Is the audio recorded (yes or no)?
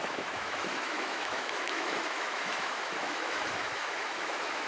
no